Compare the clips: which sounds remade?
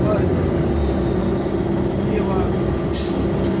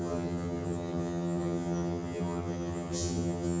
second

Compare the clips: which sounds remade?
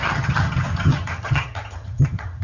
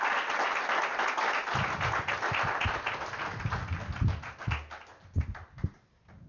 first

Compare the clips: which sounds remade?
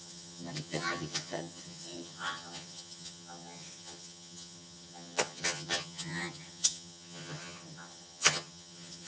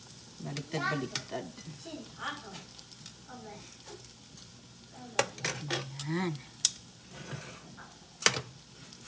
first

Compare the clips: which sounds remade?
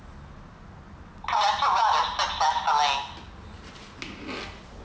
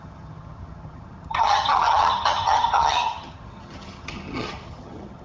second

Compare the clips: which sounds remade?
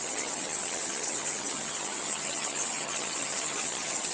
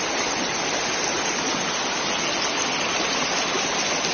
first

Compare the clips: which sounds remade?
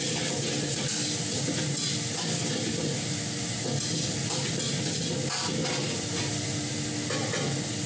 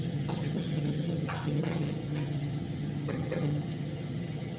second